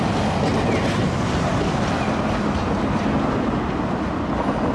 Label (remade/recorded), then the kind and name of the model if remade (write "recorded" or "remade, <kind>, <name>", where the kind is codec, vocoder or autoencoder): recorded